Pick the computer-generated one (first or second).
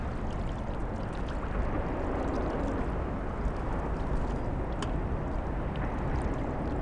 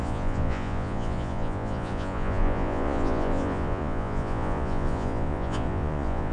second